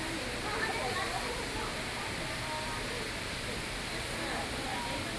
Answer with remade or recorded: recorded